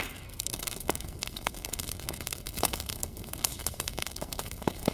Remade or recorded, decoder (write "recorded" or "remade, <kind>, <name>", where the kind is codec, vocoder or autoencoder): remade, codec, SNAC